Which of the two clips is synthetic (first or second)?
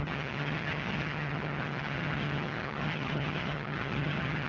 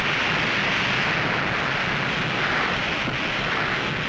first